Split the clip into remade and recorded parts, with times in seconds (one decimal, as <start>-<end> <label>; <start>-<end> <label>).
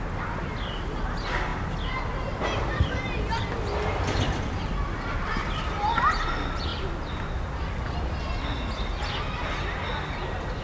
0.0-10.6 recorded